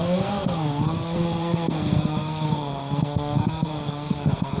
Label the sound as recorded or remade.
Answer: remade